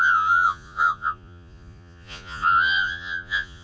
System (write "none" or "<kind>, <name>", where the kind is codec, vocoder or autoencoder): vocoder, Vocos